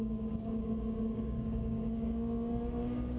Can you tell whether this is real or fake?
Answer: fake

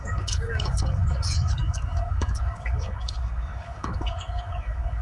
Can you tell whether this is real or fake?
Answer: fake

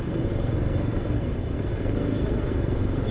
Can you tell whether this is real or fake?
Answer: fake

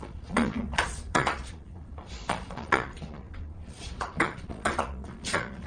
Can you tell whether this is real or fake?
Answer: fake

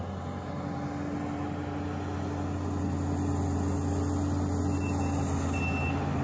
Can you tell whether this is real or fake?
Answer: real